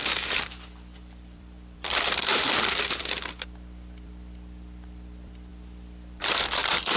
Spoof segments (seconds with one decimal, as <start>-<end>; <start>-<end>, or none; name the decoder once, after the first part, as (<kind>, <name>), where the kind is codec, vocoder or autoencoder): 0.0-3.0 (vocoder, BigVGAN v2); 5.5-7.0